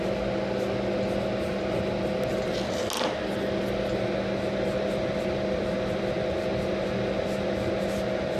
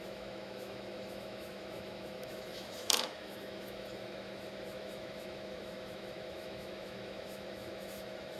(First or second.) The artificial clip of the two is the second